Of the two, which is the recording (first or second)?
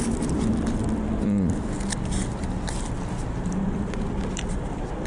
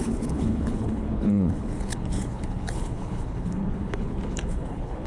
first